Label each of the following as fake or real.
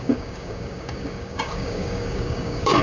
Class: fake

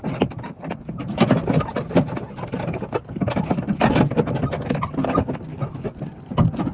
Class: real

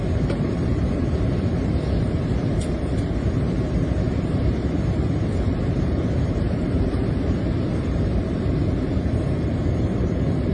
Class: fake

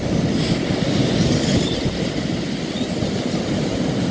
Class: real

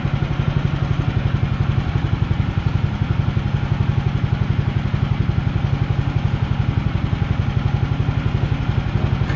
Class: real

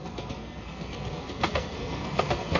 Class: fake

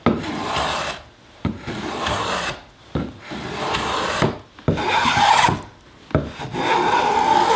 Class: real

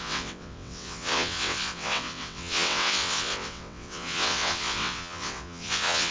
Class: fake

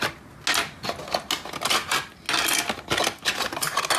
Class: real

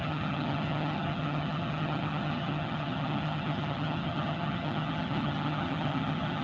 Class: fake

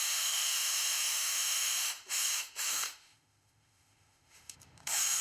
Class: fake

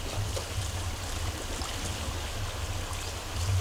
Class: real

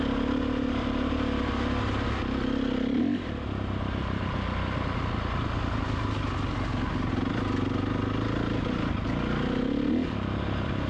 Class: real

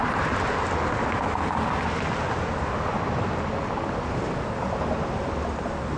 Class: real